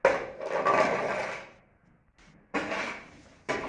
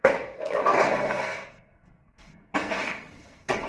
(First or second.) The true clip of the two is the first